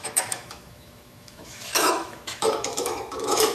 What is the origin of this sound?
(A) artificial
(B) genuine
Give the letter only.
A